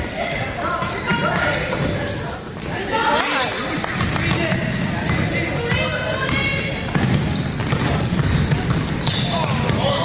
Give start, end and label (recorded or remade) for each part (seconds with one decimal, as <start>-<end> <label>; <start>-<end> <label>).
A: 0.0-10.0 recorded